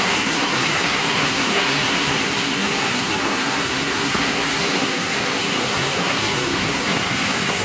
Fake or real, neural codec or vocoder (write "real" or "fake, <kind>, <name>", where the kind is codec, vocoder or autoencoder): fake, codec, SNAC